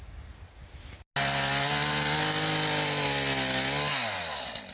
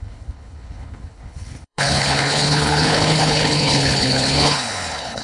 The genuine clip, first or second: first